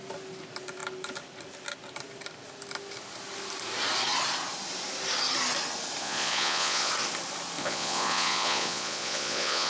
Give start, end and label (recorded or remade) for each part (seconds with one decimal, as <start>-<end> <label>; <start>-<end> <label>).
0.0-6.0 recorded; 6.0-6.9 remade; 6.9-7.6 recorded; 7.6-9.7 remade